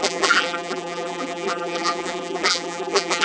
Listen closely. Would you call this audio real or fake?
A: fake